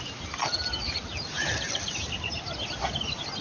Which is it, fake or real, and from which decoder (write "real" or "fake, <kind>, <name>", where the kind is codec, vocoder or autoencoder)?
real